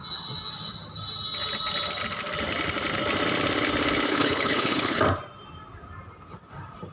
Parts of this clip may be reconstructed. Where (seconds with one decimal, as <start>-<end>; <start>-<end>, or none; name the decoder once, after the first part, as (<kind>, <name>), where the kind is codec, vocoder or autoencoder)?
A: 4.1-5.0 (codec, HILCodec)